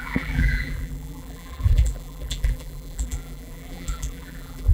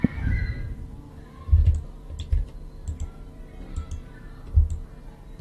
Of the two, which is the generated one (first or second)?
first